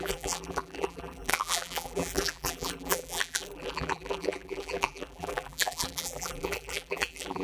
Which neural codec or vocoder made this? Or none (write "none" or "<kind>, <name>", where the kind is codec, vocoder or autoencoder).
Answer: vocoder, BigVGAN v2